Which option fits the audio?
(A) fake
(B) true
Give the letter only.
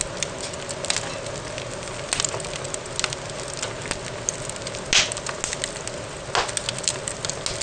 B